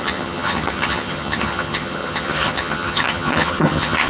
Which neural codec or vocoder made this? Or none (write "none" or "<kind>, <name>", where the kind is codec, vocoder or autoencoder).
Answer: vocoder, HiFi-GAN